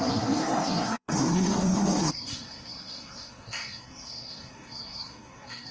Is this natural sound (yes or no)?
no